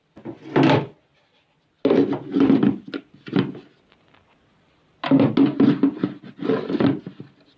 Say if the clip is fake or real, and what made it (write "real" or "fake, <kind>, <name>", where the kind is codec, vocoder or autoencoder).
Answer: real